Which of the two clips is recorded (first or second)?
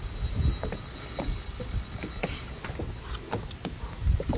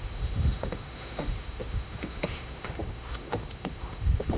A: first